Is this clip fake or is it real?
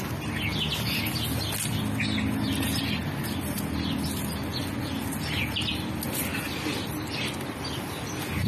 real